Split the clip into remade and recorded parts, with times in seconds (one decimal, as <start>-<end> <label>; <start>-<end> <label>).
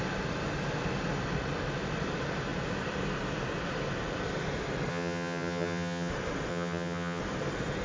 0.0-4.9 recorded; 4.9-6.1 remade; 6.1-6.5 recorded; 6.5-7.2 remade; 7.2-7.8 recorded